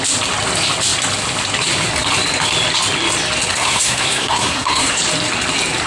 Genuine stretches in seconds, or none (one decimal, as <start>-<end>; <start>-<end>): 0.0-3.5; 5.0-5.9